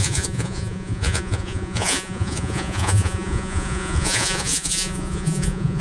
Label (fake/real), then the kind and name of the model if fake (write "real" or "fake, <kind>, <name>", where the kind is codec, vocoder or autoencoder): fake, vocoder, Vocos